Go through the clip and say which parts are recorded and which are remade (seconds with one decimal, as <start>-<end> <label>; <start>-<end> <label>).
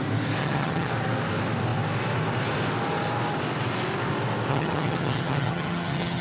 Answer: 0.0-0.4 recorded; 0.4-0.9 remade; 0.9-4.5 recorded; 4.5-6.2 remade